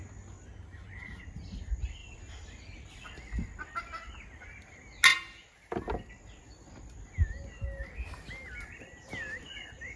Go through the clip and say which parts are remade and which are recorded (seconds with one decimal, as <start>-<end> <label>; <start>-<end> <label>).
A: 0.0-10.0 recorded